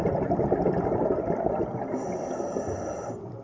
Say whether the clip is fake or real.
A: real